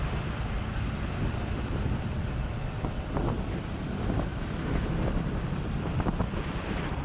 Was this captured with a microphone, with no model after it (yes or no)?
no